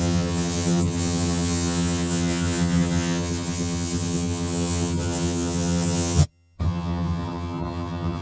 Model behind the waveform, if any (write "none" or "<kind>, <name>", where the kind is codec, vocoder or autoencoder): vocoder, HiFi-GAN